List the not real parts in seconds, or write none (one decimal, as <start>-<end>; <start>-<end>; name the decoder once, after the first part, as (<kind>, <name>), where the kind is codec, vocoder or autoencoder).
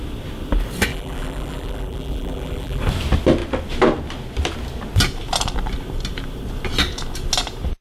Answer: 0.9-2.8 (vocoder, BigVGAN v2)